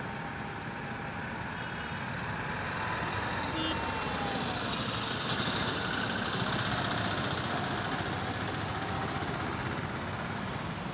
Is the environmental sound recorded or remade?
recorded